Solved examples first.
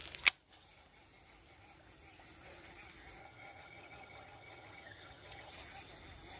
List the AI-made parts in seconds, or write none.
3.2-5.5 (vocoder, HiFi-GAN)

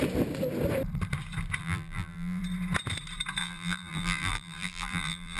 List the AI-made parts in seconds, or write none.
1.6-2.4 (vocoder, BigVGAN v2); 3.4-5.4